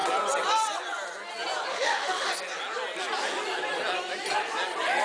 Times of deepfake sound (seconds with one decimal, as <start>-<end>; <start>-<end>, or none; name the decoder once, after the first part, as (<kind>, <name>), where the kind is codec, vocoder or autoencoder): 1.7-2.3 (autoencoder, DAC-VAE)